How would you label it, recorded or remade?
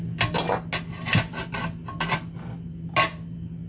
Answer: recorded